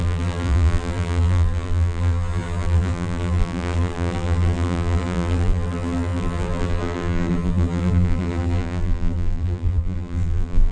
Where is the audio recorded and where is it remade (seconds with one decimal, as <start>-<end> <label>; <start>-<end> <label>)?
0.0-10.7 remade